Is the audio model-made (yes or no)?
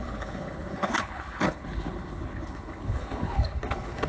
yes